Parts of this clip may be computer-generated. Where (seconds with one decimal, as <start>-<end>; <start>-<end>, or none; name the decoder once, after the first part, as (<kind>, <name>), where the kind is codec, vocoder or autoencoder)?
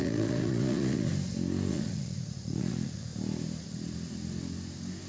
0.0-1.1 (vocoder, Vocos); 1.7-3.1